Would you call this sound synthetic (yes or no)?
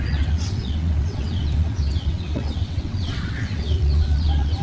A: yes